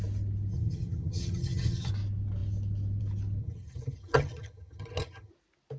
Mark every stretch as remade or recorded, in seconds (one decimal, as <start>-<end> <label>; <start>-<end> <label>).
0.0-0.5 recorded; 0.5-1.9 remade; 1.9-3.4 recorded; 3.4-5.3 remade; 5.3-5.8 recorded